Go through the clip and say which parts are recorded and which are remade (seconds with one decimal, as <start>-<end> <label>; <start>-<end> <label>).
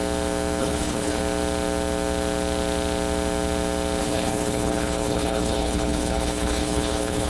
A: 0.0-0.6 recorded; 0.6-1.2 remade; 1.2-4.0 recorded; 4.0-7.3 remade